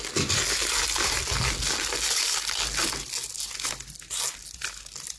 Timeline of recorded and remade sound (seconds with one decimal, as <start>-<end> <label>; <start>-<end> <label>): 0.0-5.2 recorded